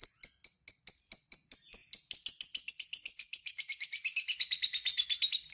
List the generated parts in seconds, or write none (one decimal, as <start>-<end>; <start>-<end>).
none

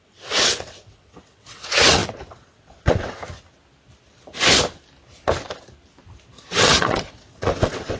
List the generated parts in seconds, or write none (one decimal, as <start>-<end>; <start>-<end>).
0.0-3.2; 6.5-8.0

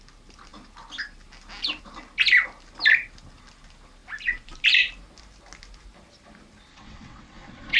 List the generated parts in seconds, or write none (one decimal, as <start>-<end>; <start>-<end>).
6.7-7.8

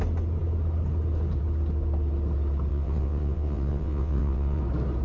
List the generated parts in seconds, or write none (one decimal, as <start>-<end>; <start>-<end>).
2.7-4.6

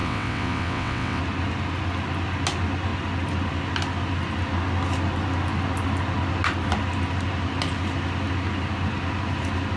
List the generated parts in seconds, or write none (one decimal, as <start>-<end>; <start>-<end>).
0.0-1.2